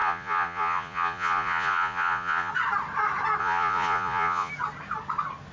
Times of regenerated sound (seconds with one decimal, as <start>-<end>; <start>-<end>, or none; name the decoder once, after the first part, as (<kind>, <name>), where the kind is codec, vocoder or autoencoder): 0.0-2.5 (vocoder, Vocos); 3.4-4.5

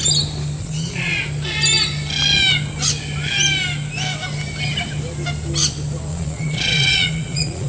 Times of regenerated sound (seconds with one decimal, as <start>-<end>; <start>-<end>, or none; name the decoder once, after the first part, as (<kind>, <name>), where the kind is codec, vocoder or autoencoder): 0.6-1.2 (vocoder, Vocos); 6.1-7.7

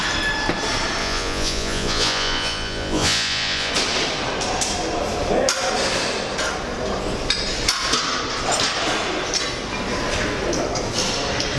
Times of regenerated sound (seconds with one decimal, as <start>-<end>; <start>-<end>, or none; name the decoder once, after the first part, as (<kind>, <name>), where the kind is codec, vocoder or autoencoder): 1.0-3.7 (vocoder, Vocos)

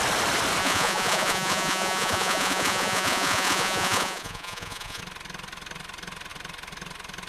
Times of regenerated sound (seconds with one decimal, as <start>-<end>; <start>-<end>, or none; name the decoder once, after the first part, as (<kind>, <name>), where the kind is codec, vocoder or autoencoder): 0.6-5.0 (vocoder, Vocos)